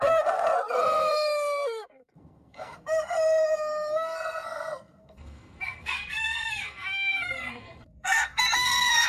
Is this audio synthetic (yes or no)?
yes